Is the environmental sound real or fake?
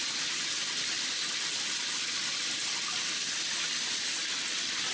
real